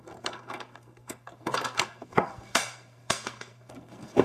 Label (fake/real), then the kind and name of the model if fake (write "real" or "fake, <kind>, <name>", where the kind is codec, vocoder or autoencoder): fake, codec, SNAC